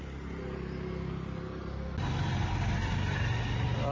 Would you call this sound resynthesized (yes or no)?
no